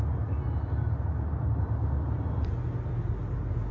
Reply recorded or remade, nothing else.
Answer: recorded